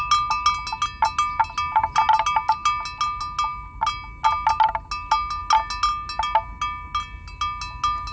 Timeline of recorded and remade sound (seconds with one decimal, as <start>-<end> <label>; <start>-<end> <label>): 0.0-8.1 recorded